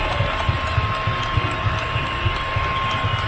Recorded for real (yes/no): yes